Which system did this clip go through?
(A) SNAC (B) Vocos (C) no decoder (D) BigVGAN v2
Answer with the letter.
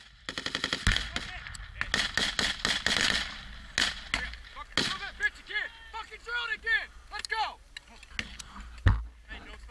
C